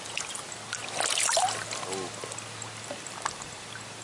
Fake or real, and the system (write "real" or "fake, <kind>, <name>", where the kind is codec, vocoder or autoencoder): real